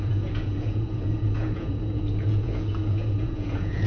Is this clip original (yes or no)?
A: no